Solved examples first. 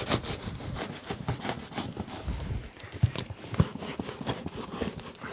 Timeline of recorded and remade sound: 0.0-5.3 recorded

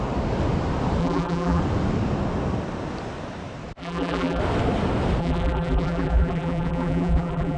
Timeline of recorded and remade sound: 0.0-1.0 recorded; 1.0-1.6 remade; 1.6-3.8 recorded; 3.8-4.4 remade; 4.4-5.2 recorded; 5.2-7.6 remade

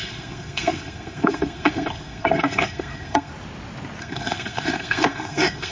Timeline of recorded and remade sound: 0.0-3.3 remade; 3.3-4.0 recorded; 4.0-5.7 remade

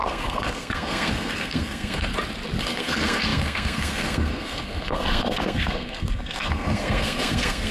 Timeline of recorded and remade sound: 0.0-2.1 remade; 2.1-2.6 recorded; 2.6-7.7 remade

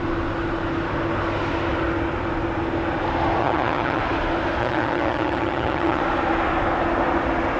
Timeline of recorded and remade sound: 0.0-3.4 recorded; 3.4-4.0 remade; 4.0-4.6 recorded; 4.6-6.0 remade; 6.0-7.6 recorded

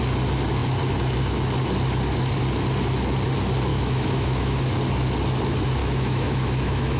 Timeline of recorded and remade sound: 0.0-3.7 recorded; 3.7-4.6 remade; 4.6-5.8 recorded; 5.8-7.0 remade